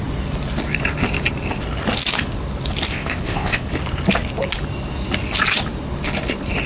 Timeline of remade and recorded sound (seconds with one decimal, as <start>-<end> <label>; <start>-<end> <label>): 0.0-2.9 recorded; 2.9-3.7 remade; 3.7-6.7 recorded